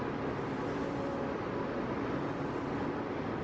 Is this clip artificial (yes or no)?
no